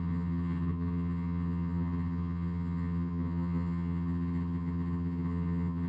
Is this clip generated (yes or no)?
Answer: yes